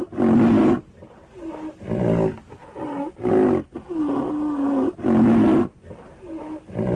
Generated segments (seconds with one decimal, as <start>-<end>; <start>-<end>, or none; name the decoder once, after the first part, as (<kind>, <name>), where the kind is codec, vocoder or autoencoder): none

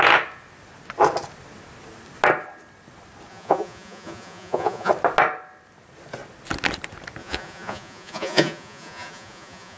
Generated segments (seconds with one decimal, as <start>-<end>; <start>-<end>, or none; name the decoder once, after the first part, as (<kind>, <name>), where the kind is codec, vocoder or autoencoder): 3.3-4.9 (vocoder, Vocos); 7.2-9.8